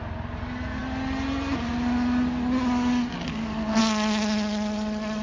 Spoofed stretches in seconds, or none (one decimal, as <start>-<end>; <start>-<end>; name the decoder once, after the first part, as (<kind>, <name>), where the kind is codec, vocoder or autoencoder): none